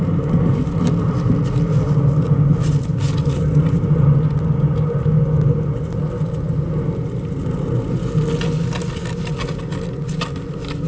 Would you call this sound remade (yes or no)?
no